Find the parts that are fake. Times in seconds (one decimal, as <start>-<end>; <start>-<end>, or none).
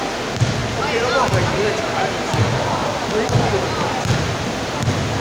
none